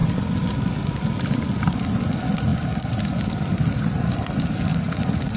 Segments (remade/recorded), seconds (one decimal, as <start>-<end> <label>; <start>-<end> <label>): 0.0-4.7 recorded; 4.7-5.4 remade

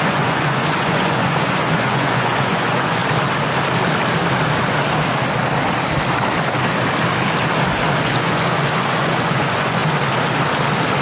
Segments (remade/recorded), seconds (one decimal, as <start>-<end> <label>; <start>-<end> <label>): 0.0-3.0 remade; 3.0-8.0 recorded; 8.0-9.8 remade; 9.8-11.0 recorded

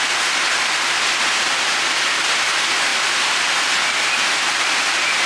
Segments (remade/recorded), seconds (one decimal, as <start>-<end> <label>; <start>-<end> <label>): 0.0-5.3 recorded

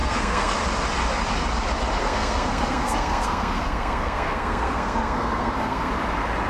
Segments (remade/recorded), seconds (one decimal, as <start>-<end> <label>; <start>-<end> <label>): 0.0-0.5 remade; 0.5-2.0 recorded; 2.0-5.9 remade; 5.9-6.5 recorded

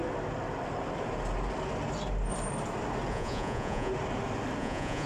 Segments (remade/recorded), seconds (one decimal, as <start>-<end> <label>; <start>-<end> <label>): 0.0-3.1 recorded; 3.1-3.9 remade; 3.9-4.6 recorded; 4.6-5.1 remade

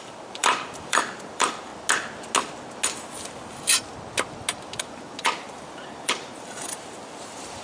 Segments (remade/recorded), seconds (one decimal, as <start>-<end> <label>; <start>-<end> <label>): 0.0-1.7 remade; 1.7-4.8 recorded; 4.8-7.6 remade